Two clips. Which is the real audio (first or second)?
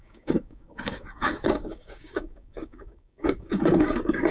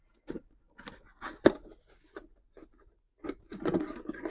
second